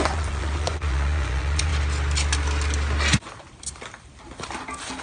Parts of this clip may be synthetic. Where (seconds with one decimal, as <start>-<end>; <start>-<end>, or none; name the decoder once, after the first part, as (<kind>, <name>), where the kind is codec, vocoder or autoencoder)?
0.0-1.7 (vocoder, Vocos)